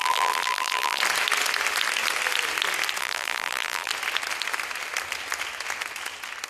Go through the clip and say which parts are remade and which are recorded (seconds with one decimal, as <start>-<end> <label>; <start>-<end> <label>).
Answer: 0.0-1.0 remade; 1.0-3.0 recorded; 3.0-3.9 remade; 3.9-6.5 recorded